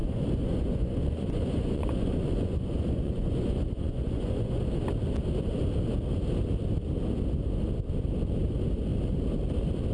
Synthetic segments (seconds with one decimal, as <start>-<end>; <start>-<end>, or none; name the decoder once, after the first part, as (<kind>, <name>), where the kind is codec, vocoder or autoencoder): 0.0-4.6 (vocoder, Vocos)